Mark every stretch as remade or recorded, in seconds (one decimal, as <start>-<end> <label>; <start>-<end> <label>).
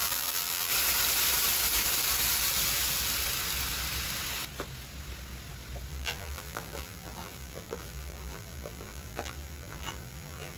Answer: 0.0-0.7 remade; 0.7-5.9 recorded; 5.9-10.6 remade